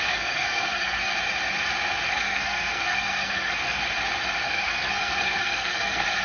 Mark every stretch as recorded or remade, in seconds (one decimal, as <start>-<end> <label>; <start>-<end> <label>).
0.0-1.1 remade; 1.1-2.1 recorded; 2.1-3.8 remade; 3.8-4.4 recorded; 4.4-6.2 remade

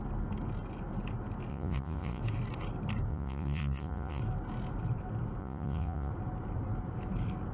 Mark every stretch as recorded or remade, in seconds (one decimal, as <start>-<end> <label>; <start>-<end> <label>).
0.0-1.5 recorded; 1.5-2.2 remade; 2.2-3.1 recorded; 3.1-4.2 remade; 4.2-5.4 recorded; 5.4-6.1 remade; 6.1-7.5 recorded

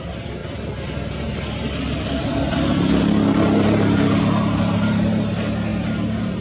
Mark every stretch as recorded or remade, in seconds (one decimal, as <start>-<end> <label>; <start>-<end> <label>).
0.0-6.4 recorded

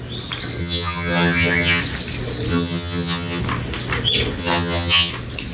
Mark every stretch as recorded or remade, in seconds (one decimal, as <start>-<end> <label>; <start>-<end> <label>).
0.0-0.6 recorded; 0.6-1.8 remade; 1.8-2.5 recorded; 2.5-3.4 remade; 3.4-4.4 recorded; 4.4-5.1 remade; 5.1-5.5 recorded

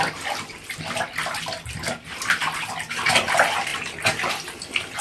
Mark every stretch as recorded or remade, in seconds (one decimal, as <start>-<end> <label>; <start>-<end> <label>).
0.0-5.0 recorded

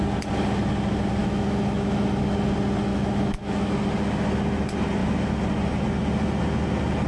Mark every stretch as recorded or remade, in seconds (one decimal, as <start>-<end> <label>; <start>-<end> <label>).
0.0-1.2 recorded; 1.2-2.0 remade; 2.0-2.9 recorded; 2.9-3.7 remade; 3.7-7.1 recorded

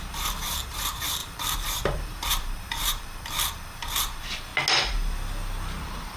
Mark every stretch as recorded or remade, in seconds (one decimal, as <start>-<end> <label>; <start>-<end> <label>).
0.0-4.5 remade; 4.5-5.8 recorded; 5.8-6.2 remade

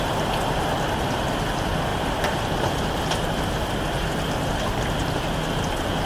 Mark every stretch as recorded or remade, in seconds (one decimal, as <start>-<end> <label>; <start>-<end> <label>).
0.0-1.9 recorded; 1.9-2.7 remade; 2.7-6.1 recorded